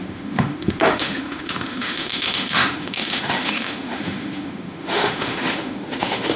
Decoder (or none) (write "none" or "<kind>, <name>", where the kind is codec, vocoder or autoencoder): autoencoder, DAC-VAE